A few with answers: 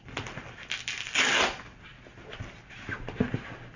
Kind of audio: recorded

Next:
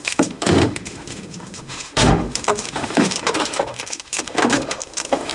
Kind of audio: remade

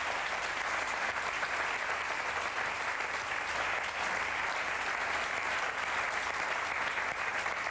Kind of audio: recorded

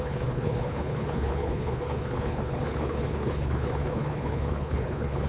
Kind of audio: remade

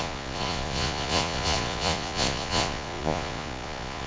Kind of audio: remade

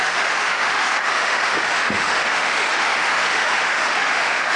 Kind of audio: remade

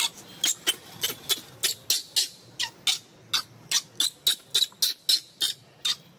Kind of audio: recorded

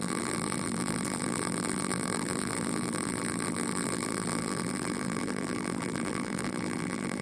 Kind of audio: remade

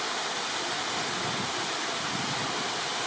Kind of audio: recorded